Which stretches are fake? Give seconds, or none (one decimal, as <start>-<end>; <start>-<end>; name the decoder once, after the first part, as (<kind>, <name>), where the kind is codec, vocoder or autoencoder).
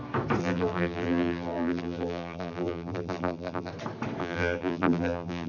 0.4-3.7 (vocoder, BigVGAN v2); 4.2-5.5